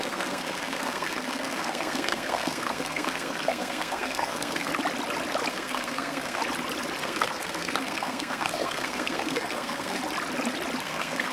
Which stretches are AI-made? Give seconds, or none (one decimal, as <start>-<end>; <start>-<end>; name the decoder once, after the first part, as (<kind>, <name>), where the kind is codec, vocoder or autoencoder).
0.0-4.7 (codec, SNAC); 5.5-6.4; 7.0-10.0; 10.8-11.3